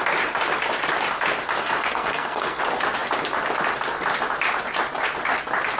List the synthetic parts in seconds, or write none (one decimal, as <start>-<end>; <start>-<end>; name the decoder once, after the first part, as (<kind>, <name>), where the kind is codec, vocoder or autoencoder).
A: 1.6-2.6 (codec, SNAC)